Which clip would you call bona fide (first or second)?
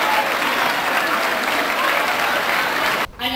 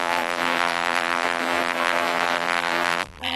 first